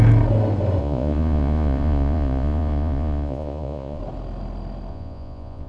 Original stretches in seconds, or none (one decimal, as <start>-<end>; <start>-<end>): 0.0-0.8; 4.0-4.9